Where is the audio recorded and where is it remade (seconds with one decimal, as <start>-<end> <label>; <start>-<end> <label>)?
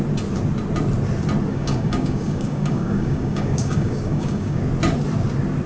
0.0-1.5 recorded; 1.5-4.6 remade; 4.6-5.7 recorded